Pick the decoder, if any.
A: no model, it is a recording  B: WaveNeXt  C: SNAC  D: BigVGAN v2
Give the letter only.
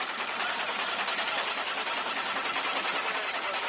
A